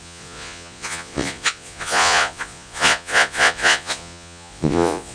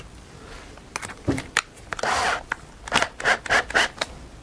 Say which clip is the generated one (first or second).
first